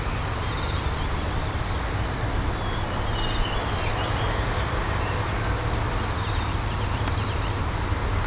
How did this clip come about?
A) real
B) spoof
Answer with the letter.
A